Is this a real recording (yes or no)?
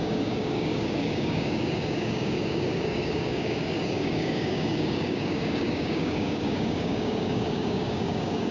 no